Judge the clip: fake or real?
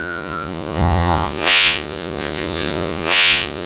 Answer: fake